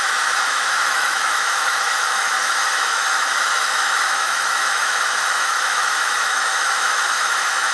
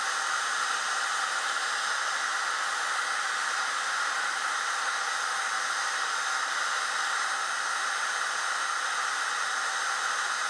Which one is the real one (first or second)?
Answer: second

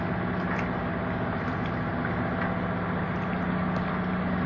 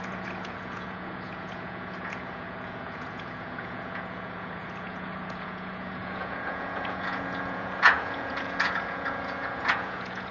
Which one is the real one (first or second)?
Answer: first